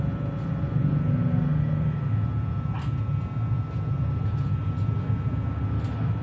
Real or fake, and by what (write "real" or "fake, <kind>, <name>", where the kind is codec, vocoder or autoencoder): real